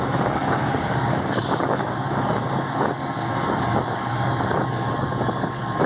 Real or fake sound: fake